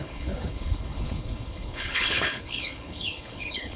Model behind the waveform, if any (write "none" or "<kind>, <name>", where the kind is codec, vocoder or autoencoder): codec, HILCodec